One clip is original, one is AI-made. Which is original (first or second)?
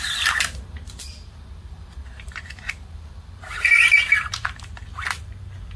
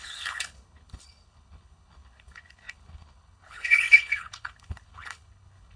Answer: first